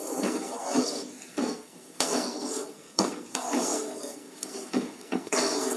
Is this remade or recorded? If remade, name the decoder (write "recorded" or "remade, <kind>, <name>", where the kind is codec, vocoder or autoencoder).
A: remade, codec, SNAC